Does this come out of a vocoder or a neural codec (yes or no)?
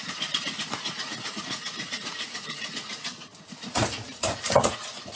yes